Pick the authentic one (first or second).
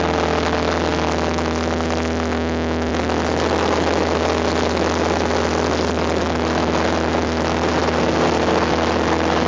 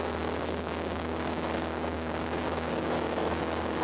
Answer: first